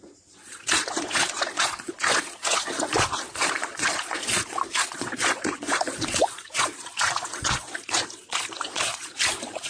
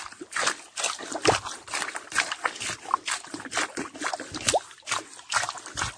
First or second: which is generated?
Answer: first